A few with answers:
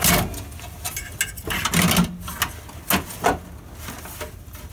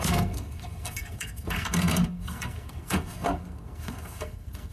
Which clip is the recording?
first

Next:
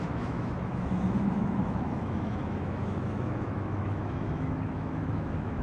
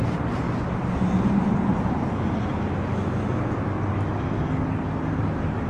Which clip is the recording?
second